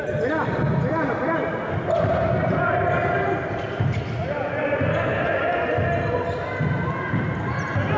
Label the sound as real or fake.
real